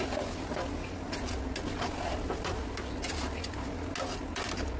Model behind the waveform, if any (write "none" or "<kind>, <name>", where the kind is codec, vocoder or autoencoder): none